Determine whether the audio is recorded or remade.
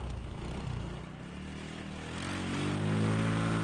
recorded